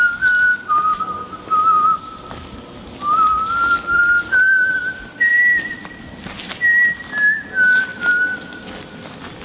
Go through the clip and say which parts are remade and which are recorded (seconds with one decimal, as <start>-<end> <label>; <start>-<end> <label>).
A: 0.0-9.4 recorded

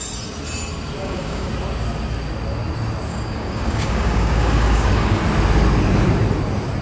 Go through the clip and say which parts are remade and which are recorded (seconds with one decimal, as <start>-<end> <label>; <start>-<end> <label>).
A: 0.0-1.0 recorded; 1.0-1.5 remade; 1.5-3.1 recorded; 3.1-5.2 remade; 5.2-6.8 recorded

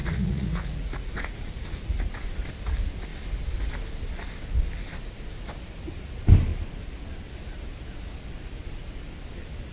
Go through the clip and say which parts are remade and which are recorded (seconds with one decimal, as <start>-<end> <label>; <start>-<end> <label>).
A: 0.0-2.1 remade; 2.1-9.7 recorded